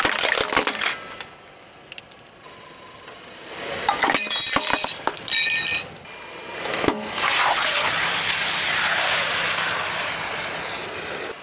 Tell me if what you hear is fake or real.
real